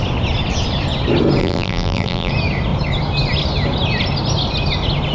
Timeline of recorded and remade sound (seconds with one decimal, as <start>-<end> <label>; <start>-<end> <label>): 0.0-1.4 recorded; 1.4-2.3 remade; 2.3-5.1 recorded